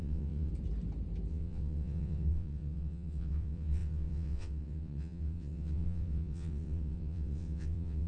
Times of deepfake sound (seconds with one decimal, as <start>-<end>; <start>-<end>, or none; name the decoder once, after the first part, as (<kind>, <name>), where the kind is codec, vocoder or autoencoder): 0.0-0.5 (vocoder, WaveNeXt); 1.3-8.1